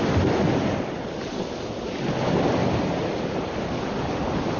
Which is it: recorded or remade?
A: remade